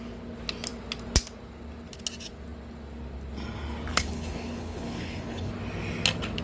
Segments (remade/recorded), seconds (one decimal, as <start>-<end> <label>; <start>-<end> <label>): 0.0-3.9 recorded; 3.9-5.5 remade; 5.5-6.4 recorded